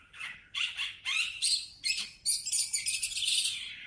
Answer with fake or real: real